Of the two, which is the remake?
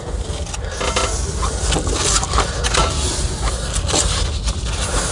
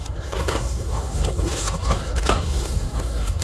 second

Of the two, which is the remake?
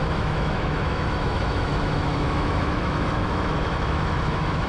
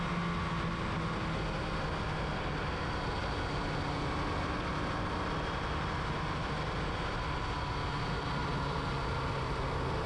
first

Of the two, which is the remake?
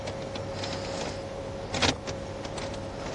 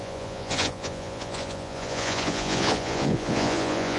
second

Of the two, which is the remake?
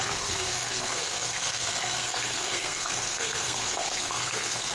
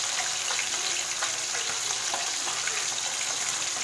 first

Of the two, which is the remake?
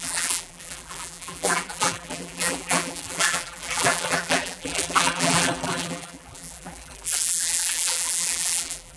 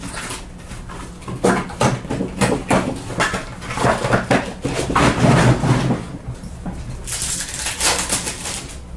first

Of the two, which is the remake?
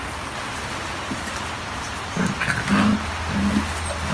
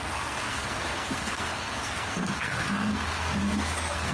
second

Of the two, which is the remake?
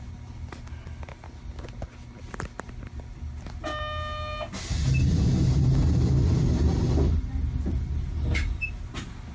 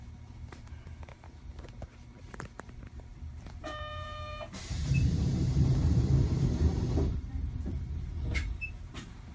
second